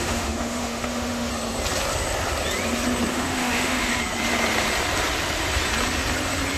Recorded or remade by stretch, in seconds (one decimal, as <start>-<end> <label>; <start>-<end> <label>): 0.0-1.3 remade; 1.3-3.1 recorded; 3.1-3.9 remade; 3.9-6.6 recorded